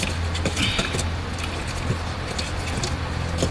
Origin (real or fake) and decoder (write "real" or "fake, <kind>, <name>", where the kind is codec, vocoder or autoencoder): real